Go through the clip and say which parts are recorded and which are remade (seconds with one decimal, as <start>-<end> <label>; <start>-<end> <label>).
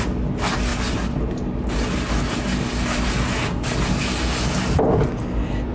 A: 0.0-5.7 recorded